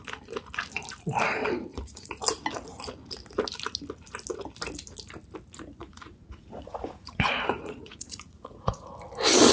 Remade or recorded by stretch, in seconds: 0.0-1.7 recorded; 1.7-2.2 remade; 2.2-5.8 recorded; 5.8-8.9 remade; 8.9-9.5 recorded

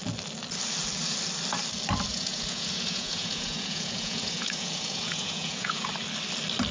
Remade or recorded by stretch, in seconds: 0.0-2.1 recorded; 2.1-5.9 remade; 5.9-6.7 recorded

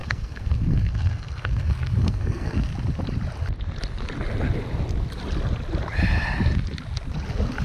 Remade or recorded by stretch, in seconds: 0.0-2.7 remade; 2.7-7.6 recorded

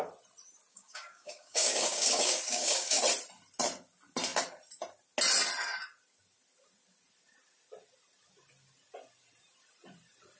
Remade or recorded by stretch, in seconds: 0.0-0.7 recorded; 0.7-3.0 remade; 3.0-10.4 recorded